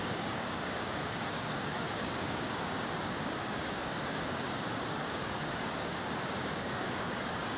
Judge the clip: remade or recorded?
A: remade